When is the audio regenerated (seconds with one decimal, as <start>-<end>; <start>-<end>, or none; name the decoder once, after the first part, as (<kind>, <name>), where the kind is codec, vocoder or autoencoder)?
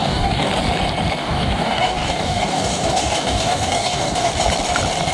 0.0-0.5 (codec, DAC); 1.2-4.3